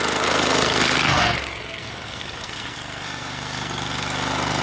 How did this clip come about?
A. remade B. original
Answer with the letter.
A